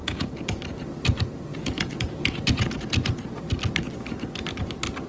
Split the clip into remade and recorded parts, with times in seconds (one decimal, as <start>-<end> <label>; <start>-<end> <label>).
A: 0.0-0.6 remade; 0.6-1.5 recorded; 1.5-3.5 remade; 3.5-5.1 recorded